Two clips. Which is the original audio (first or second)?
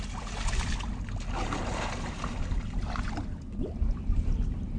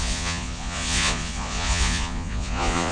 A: first